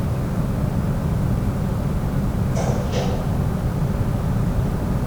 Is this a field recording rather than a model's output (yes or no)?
yes